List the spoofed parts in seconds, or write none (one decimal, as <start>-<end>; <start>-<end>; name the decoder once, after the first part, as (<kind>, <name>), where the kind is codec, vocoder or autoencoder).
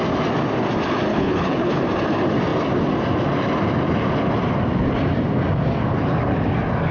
1.1-1.8 (codec, HILCodec)